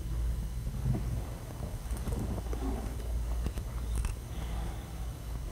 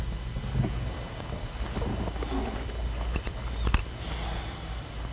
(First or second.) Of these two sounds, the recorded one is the second